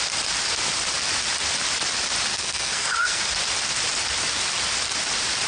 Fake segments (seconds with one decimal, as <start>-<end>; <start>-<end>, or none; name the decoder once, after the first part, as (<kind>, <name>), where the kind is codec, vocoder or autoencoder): 2.3-3.2 (codec, SNAC)